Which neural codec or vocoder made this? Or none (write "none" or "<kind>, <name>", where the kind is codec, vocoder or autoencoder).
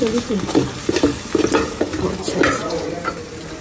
none